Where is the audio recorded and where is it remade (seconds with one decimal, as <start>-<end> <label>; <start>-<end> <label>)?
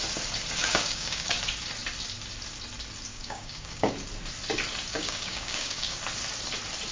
0.0-0.6 recorded; 0.6-1.4 remade; 1.4-3.1 recorded; 3.1-3.9 remade; 3.9-4.9 recorded; 4.9-6.0 remade; 6.0-6.9 recorded